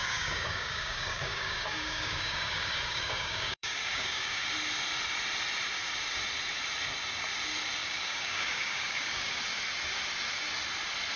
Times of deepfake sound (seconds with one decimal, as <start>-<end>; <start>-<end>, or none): 0.0-4.5; 7.8-9.4